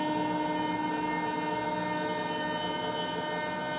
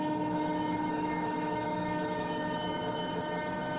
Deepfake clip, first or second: second